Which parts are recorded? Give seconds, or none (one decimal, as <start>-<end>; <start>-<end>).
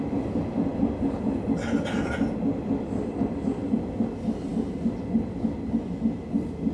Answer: 0.0-6.7